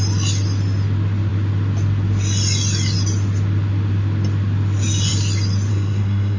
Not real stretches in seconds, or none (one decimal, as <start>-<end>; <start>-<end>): 5.7-6.4